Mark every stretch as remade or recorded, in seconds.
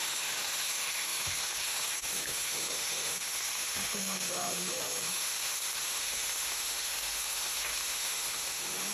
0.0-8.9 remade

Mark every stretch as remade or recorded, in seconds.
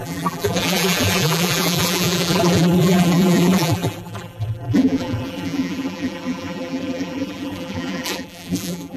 0.0-9.0 remade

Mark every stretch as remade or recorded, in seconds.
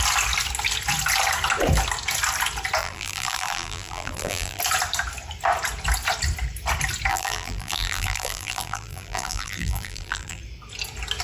0.0-2.8 recorded; 2.8-4.6 remade; 4.6-7.1 recorded; 7.1-10.4 remade; 10.4-11.2 recorded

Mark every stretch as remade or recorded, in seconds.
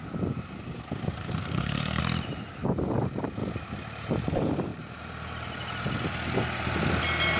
0.0-1.4 recorded; 1.4-2.0 remade; 2.0-7.4 recorded